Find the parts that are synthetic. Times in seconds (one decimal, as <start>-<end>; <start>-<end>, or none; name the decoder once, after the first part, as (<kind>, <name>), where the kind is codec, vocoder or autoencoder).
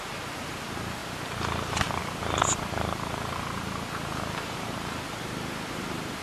0.0-6.2 (vocoder, BigVGAN v2)